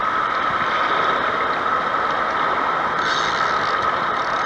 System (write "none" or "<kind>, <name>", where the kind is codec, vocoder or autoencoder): none